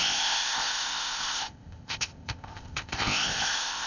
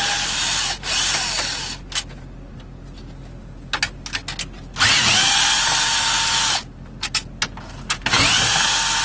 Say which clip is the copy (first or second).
first